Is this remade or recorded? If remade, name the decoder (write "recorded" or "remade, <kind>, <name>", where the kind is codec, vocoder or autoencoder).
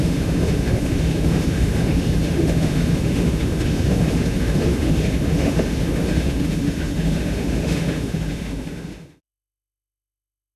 remade, autoencoder, DAC-VAE